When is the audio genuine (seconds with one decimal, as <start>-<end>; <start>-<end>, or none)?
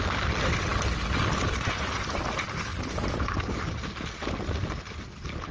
0.0-5.5